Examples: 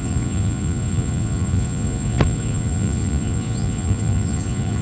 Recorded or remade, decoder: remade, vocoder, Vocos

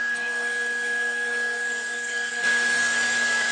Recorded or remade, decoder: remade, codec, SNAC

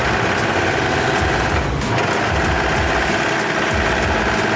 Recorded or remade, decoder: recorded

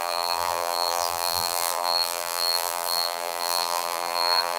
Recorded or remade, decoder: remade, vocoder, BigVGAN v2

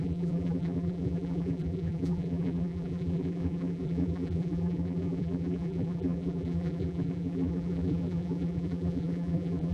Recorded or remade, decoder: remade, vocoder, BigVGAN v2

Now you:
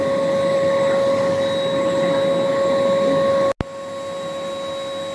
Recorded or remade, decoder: recorded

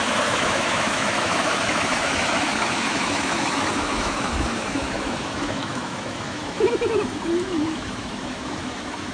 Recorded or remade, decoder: remade, autoencoder, DAC-VAE